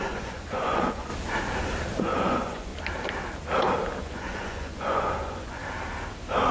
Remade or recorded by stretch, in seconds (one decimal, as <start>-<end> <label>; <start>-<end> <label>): 0.0-1.1 remade; 1.1-2.0 recorded; 2.0-2.7 remade; 2.7-4.0 recorded; 4.0-5.6 remade; 5.6-6.5 recorded